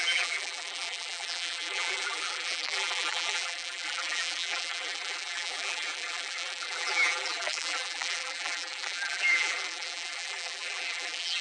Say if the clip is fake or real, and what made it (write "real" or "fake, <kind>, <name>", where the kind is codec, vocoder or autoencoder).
fake, vocoder, BigVGAN v2